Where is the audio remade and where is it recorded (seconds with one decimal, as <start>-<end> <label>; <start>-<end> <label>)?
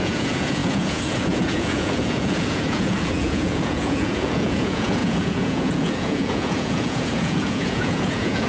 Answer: 0.0-8.5 remade